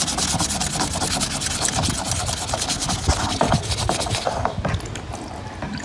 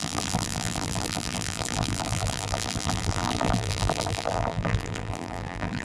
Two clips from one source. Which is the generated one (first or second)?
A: second